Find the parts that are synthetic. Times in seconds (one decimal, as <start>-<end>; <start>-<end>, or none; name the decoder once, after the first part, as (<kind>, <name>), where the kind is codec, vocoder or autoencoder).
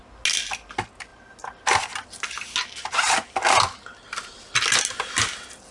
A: none